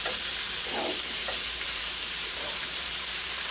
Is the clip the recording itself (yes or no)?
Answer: no